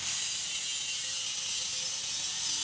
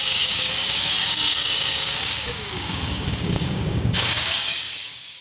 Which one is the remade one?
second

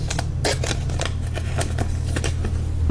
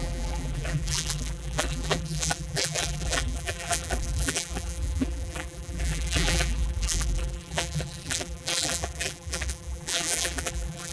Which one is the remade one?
second